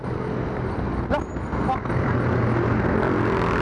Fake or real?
real